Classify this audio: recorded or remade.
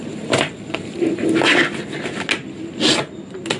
recorded